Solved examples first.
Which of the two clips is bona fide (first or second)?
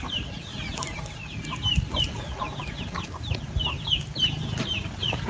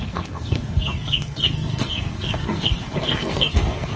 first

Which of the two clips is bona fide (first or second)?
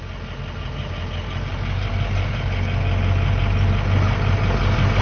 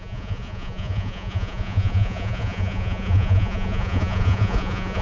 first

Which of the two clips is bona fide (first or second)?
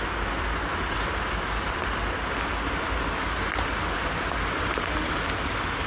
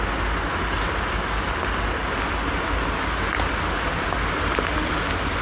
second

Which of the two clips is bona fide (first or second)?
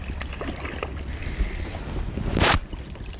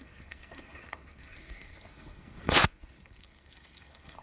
first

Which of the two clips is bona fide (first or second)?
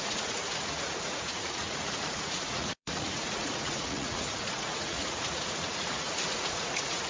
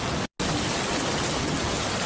second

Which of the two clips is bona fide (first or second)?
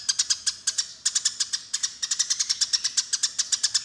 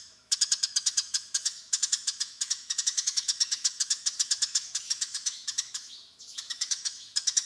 first